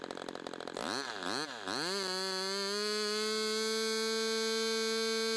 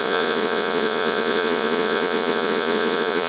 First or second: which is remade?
second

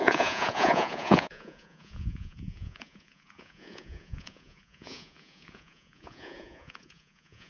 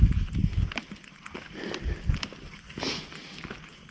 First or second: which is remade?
first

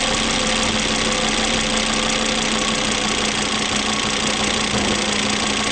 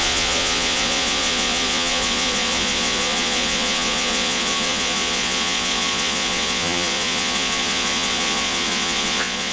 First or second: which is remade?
second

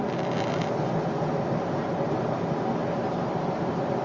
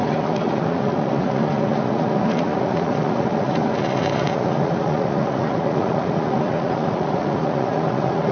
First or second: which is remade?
second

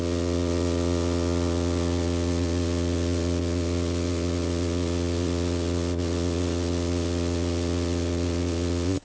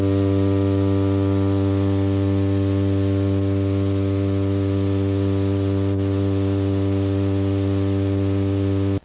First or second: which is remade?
first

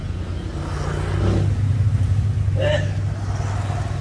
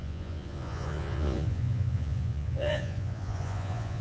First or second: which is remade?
second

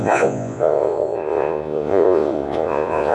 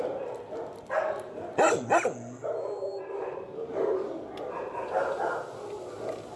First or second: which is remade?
first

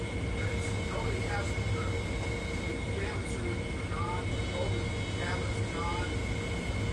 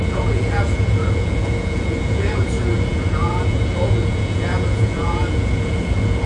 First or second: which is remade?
second